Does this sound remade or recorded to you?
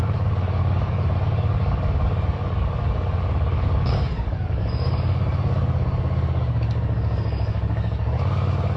remade